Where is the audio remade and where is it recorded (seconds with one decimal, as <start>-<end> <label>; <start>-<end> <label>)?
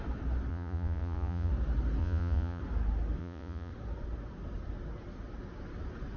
0.0-0.5 recorded; 0.5-1.5 remade; 1.5-2.0 recorded; 2.0-2.6 remade; 2.6-3.2 recorded; 3.2-3.7 remade; 3.7-6.2 recorded